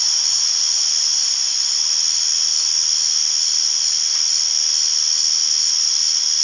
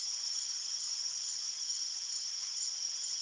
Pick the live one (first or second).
first